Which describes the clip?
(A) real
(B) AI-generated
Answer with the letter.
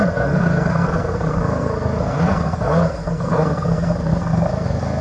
B